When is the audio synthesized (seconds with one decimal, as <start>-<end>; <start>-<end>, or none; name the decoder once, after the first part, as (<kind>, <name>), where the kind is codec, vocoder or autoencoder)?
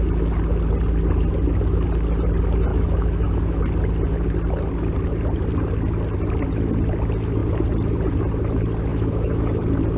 2.7-3.6 (autoencoder, DAC-VAE); 8.9-9.6